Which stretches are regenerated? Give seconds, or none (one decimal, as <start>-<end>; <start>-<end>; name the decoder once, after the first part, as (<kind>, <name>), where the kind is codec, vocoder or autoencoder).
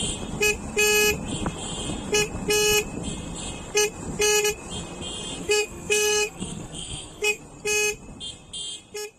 5.4-7.4 (codec, SNAC)